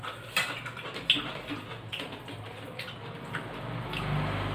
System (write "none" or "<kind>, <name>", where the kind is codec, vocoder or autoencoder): none